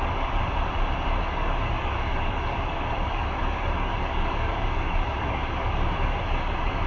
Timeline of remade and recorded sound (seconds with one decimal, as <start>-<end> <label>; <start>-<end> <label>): 0.0-0.4 remade; 0.4-1.2 recorded; 1.2-6.9 remade